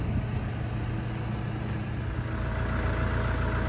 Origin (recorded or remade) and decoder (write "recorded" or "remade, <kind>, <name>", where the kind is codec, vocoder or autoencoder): recorded